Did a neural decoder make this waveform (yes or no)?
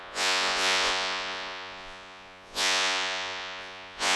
yes